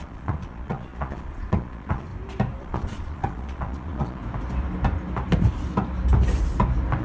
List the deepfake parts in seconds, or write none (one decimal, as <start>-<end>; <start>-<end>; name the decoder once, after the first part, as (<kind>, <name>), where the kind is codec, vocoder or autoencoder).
0.0-2.1 (vocoder, Vocos); 2.6-4.2